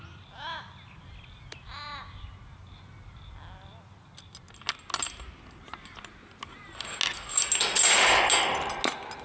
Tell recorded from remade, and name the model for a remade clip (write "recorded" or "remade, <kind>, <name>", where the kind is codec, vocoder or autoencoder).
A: recorded